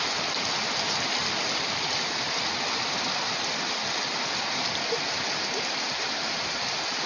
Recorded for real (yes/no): yes